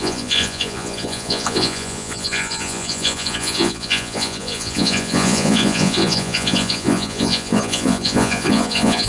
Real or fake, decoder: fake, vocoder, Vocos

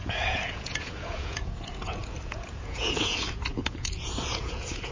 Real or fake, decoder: fake, vocoder, Vocos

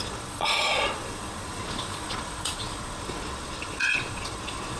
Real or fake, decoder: fake, vocoder, Vocos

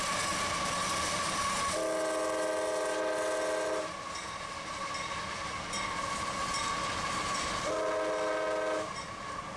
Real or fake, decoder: real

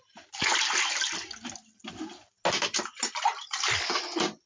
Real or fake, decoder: real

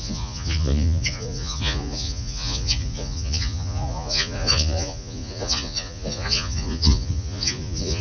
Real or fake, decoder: fake, vocoder, Vocos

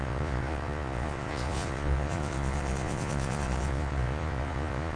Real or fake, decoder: fake, vocoder, Vocos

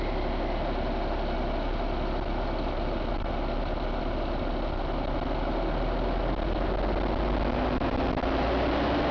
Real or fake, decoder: real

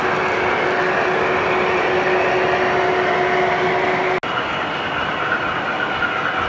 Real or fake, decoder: real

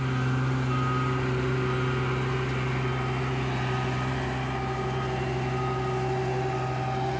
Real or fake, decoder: real